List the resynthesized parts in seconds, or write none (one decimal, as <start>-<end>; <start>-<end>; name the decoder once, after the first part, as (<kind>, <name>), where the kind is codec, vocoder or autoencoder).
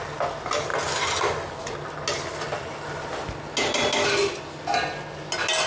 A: none